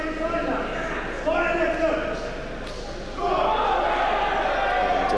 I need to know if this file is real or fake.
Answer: real